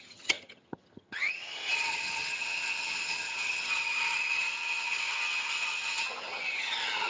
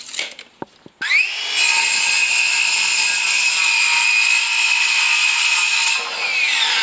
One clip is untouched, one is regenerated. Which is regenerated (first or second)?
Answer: first